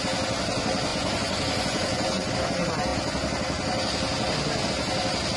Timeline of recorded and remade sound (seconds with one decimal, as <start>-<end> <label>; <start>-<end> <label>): 0.0-0.9 recorded; 0.9-2.3 remade; 2.3-5.4 recorded